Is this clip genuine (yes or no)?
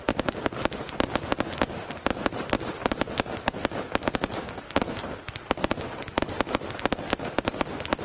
yes